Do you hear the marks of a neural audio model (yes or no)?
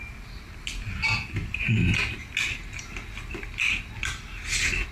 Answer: no